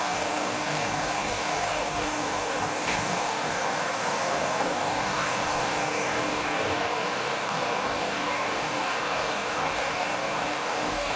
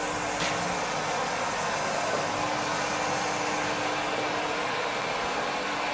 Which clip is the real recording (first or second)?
second